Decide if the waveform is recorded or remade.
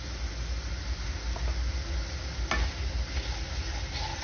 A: recorded